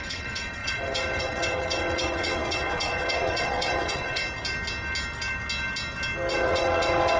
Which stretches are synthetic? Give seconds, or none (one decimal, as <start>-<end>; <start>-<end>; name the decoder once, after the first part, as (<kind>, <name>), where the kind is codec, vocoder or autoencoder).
0.0-4.2 (vocoder, WaveNeXt); 6.3-7.2